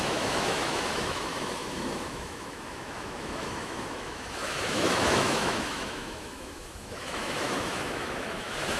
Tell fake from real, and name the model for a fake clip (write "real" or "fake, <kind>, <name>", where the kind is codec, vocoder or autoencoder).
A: fake, autoencoder, DAC-VAE